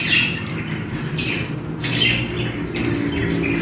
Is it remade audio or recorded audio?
recorded